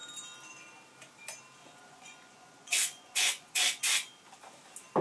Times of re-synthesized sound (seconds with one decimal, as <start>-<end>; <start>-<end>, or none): 1.6-3.8